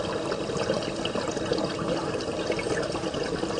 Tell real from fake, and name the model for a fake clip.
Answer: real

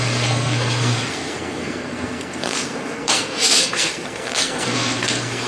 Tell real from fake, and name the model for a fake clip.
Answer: fake, codec, SNAC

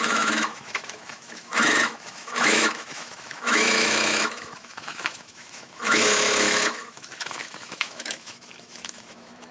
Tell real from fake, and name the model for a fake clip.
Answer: fake, autoencoder, DAC-VAE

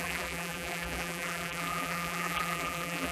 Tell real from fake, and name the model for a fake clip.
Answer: fake, vocoder, BigVGAN v2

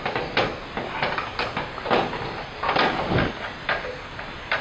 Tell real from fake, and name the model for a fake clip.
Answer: real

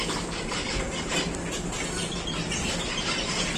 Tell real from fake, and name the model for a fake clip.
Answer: real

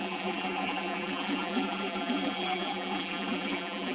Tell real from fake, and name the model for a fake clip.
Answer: fake, vocoder, BigVGAN v2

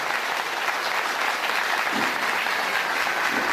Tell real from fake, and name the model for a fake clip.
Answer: fake, vocoder, BigVGAN v2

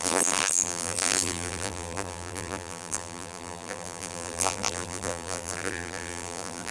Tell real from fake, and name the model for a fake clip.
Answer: fake, vocoder, BigVGAN v2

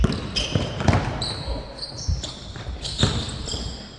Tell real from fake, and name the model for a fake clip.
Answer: real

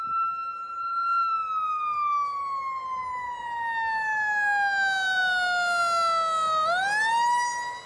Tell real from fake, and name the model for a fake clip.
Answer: real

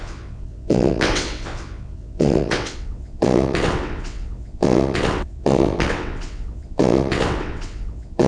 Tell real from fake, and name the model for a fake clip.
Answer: fake, vocoder, WaveNeXt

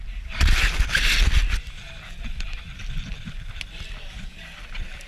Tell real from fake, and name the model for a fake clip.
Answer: real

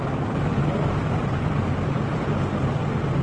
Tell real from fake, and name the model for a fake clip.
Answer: real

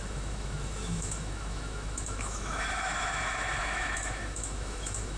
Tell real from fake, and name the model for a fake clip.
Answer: fake, autoencoder, DAC-VAE